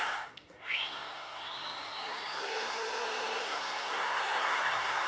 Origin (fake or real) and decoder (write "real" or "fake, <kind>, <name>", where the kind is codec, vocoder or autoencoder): fake, codec, SNAC